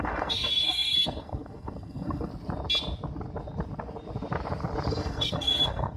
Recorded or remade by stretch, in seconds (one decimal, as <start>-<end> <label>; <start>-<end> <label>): 0.0-2.3 remade; 2.3-4.9 recorded; 4.9-6.0 remade